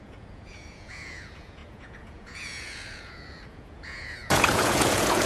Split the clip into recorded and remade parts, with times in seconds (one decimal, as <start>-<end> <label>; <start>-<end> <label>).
0.0-5.3 remade